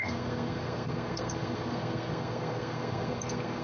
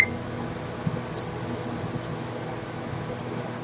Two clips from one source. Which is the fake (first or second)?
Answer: first